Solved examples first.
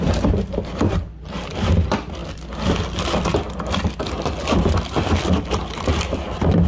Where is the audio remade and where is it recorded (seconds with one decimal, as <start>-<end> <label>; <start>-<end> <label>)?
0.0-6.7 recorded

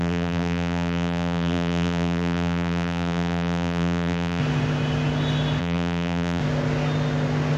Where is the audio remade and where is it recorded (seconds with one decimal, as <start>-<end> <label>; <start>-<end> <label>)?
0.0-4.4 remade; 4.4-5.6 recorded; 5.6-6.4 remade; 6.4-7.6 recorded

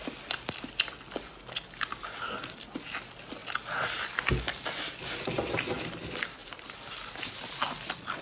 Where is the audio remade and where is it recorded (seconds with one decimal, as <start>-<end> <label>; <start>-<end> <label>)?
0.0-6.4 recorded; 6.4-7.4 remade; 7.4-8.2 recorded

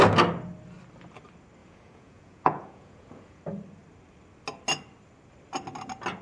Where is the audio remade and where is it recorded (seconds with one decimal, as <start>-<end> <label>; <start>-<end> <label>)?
0.0-1.6 recorded; 1.6-3.4 remade; 3.4-6.2 recorded